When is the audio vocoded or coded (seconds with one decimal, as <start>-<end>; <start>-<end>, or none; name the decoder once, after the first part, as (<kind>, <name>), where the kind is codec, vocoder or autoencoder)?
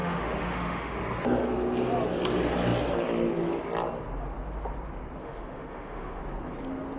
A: 0.0-1.0 (autoencoder, DAC-VAE); 5.2-6.2